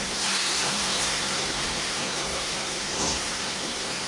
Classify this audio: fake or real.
fake